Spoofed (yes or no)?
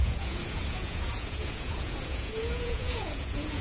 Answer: yes